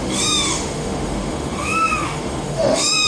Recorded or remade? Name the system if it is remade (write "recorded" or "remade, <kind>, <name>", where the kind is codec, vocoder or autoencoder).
remade, autoencoder, DAC-VAE